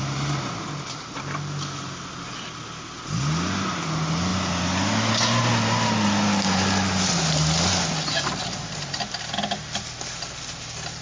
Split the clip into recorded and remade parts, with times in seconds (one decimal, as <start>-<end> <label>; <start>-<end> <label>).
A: 0.0-11.0 recorded